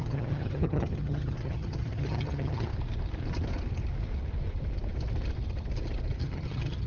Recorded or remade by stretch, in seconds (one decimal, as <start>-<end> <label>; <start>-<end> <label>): 0.0-2.7 remade; 2.7-6.2 recorded; 6.2-6.9 remade